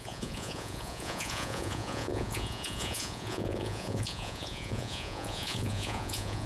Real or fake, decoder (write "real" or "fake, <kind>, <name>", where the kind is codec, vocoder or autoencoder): fake, vocoder, Vocos